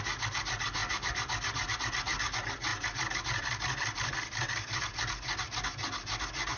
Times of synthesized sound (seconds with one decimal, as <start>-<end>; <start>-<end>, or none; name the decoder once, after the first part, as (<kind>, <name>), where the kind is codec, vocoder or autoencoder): none